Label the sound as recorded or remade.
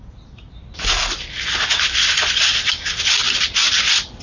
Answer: recorded